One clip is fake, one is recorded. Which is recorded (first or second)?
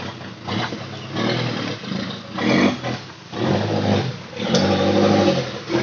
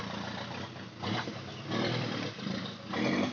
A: first